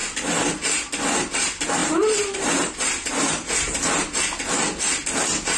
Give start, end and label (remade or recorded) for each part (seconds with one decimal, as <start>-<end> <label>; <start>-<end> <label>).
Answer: 0.0-1.8 recorded; 1.8-4.2 remade; 4.2-5.6 recorded